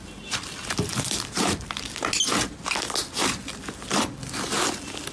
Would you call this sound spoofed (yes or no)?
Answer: no